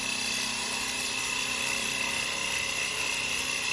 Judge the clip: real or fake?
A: real